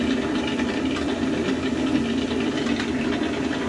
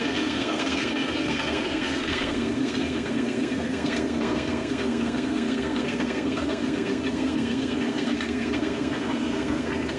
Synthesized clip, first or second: second